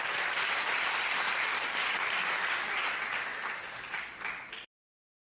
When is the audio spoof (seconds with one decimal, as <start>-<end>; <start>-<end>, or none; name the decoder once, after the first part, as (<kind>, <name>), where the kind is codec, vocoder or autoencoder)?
none